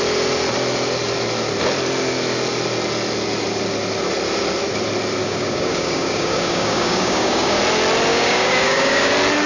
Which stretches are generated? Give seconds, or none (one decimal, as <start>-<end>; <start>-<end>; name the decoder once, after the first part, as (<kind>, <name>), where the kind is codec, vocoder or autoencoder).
5.2-7.6 (codec, DAC); 8.1-9.1